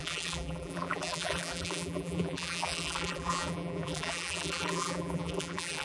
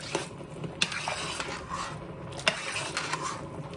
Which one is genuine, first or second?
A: second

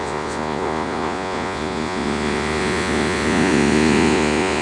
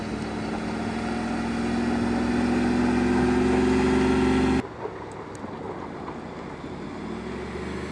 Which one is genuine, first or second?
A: second